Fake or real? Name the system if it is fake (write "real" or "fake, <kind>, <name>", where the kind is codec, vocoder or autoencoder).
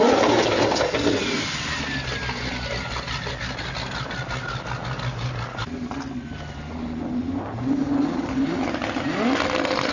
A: real